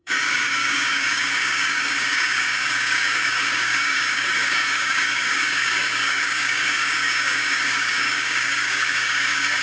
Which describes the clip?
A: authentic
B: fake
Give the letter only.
B